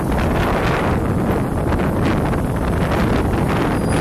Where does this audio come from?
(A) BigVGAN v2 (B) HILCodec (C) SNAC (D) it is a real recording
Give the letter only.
D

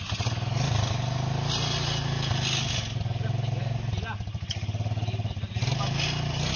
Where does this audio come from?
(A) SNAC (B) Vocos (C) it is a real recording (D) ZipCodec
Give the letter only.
C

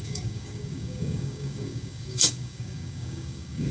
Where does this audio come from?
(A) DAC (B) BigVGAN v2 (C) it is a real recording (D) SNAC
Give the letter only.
A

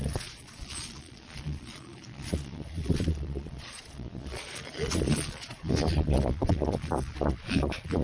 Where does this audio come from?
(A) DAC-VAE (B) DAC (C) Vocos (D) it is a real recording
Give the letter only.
C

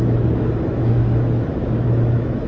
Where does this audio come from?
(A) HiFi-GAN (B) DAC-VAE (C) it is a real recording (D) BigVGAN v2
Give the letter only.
B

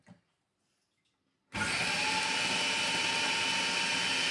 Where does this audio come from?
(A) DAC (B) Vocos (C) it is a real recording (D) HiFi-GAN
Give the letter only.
C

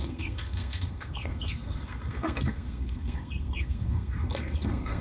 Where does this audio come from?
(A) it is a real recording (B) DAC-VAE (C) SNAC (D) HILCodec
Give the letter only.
C